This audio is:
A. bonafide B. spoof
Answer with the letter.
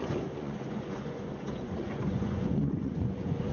B